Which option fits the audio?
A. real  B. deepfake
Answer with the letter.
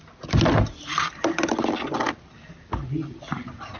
A